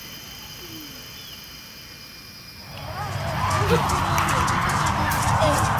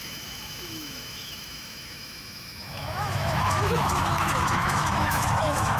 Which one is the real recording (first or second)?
first